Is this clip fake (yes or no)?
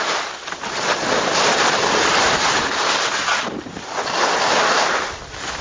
no